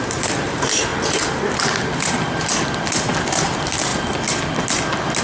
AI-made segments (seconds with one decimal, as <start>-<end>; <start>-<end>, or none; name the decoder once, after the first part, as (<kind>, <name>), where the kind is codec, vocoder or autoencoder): 0.0-0.9 (vocoder, BigVGAN v2); 3.2-3.9